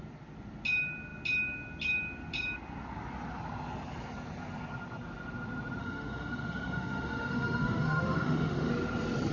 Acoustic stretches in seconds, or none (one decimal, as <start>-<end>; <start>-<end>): 0.0-5.8; 8.7-9.3

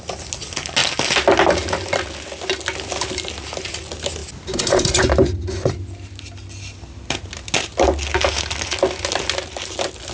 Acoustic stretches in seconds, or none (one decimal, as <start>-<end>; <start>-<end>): 0.0-10.1

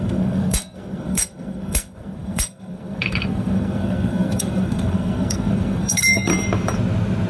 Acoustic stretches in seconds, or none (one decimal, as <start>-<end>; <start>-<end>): 6.3-7.3

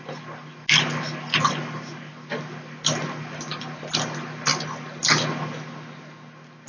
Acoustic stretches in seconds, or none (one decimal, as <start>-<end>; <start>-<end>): 0.0-6.7